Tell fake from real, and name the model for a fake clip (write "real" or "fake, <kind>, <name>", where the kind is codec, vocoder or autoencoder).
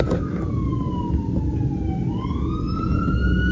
real